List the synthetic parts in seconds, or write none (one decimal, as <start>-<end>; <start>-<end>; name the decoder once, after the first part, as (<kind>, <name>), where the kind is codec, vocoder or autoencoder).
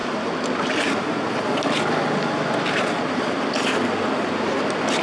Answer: none